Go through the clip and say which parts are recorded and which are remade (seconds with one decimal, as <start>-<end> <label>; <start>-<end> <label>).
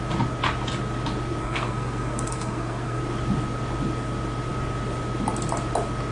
0.0-1.4 recorded; 1.4-3.0 remade; 3.0-6.1 recorded